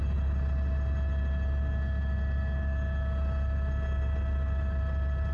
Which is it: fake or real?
real